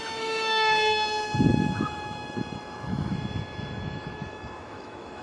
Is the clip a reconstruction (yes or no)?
yes